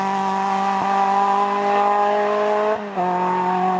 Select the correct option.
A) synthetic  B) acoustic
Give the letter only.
B